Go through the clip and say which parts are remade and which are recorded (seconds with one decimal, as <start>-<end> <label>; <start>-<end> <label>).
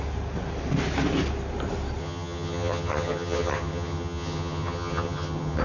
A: 0.0-2.0 recorded; 2.0-5.6 remade